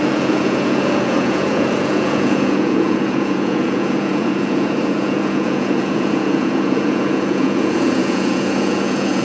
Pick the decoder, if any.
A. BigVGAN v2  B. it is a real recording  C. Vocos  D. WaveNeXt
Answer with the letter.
C